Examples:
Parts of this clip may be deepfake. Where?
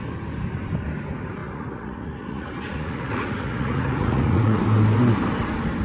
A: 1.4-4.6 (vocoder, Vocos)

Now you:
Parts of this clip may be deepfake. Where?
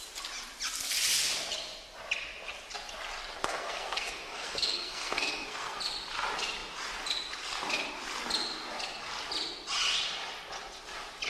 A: 3.4-5.8 (codec, SNAC)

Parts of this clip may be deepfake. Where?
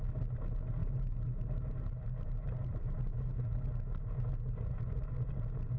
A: 0.8-3.6 (vocoder, BigVGAN v2)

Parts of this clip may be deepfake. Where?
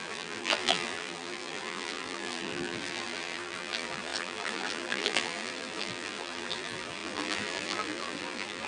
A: 0.0-8.7 (vocoder, BigVGAN v2)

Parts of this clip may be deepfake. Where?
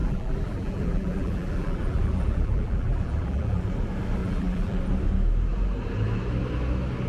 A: 0.0-3.7 (vocoder, BigVGAN v2); 4.2-4.8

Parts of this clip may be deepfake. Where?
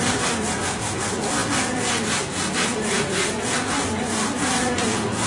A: 0.0-1.4 (vocoder, BigVGAN v2); 2.2-5.3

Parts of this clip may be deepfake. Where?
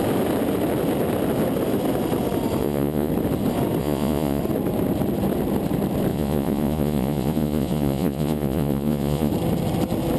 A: 2.6-3.1 (vocoder, Vocos); 3.8-4.4; 6.1-9.3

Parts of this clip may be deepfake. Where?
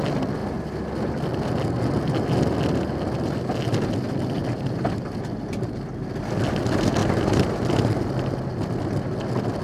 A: 4.4-5.1 (vocoder, BigVGAN v2); 7.0-7.9